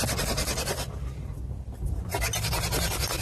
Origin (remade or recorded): recorded